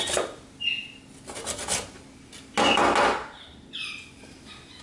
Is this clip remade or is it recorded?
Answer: recorded